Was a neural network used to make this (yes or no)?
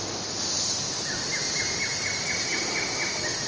no